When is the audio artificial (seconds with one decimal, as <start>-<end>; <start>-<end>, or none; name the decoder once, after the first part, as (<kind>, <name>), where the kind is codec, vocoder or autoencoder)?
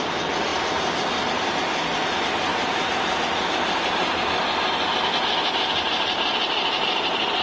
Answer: none